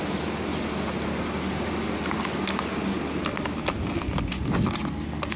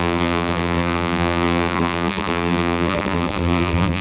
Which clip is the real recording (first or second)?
first